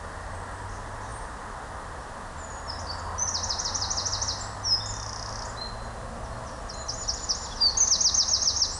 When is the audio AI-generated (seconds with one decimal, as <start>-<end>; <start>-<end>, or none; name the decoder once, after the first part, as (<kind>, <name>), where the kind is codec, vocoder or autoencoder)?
none

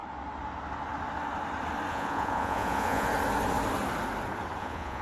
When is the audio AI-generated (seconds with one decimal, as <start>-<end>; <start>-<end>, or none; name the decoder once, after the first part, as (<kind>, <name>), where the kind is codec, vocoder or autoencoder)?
1.9-3.1 (vocoder, Vocos); 4.6-5.0

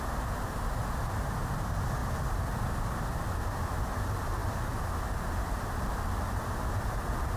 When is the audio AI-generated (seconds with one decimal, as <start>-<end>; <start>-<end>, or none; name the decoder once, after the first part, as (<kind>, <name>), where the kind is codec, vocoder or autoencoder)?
none

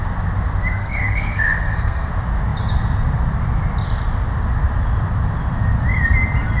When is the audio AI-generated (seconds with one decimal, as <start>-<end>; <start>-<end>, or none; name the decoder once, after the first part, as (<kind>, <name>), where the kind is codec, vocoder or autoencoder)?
0.8-2.1 (codec, SNAC)

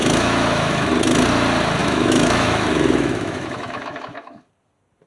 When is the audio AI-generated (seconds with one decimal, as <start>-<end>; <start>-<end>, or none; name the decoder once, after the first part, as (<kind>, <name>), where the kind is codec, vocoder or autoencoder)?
0.0-0.9 (autoencoder, DAC-VAE); 1.8-4.5